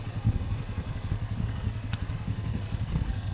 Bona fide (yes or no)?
no